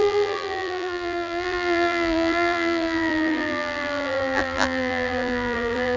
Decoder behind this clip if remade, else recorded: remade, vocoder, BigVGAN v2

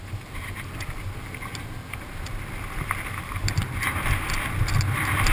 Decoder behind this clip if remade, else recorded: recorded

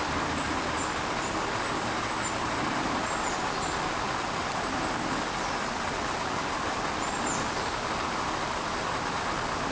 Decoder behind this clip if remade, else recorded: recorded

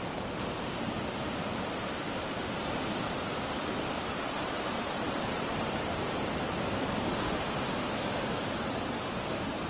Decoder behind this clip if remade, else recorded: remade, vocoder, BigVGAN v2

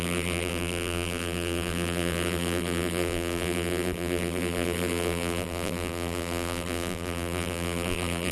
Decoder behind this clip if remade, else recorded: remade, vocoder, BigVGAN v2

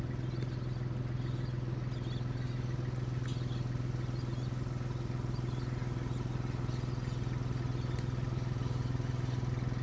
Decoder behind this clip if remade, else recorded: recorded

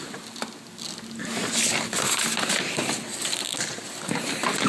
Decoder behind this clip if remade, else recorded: recorded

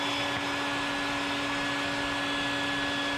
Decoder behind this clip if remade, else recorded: recorded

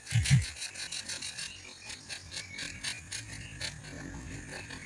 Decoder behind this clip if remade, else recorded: recorded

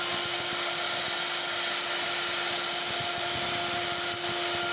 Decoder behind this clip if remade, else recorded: recorded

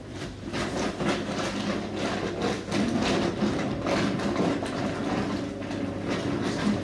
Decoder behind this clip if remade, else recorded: recorded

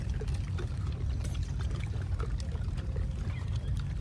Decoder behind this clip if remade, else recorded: recorded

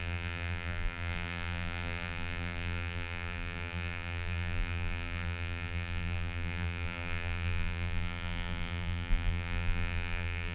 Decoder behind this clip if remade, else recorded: remade, vocoder, BigVGAN v2